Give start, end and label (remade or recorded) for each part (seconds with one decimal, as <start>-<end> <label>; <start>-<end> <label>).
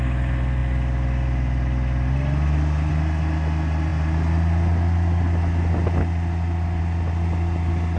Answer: 0.0-8.0 recorded